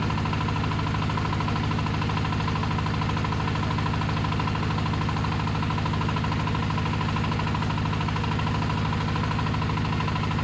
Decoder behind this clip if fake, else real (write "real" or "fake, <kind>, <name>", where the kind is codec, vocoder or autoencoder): real